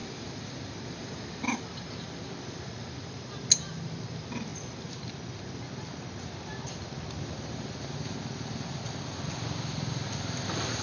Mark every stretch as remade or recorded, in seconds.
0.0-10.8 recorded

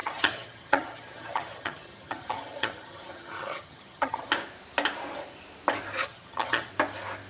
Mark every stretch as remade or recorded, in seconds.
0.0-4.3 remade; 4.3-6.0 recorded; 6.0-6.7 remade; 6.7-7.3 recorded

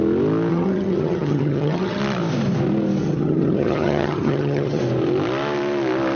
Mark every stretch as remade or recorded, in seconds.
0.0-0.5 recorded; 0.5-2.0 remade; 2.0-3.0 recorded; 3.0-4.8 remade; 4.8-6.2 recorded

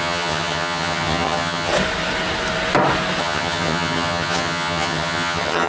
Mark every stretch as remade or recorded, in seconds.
0.0-1.7 remade; 1.7-3.2 recorded; 3.2-5.7 remade